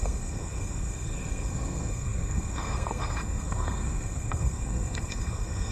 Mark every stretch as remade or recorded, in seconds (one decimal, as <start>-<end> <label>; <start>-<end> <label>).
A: 0.0-5.7 remade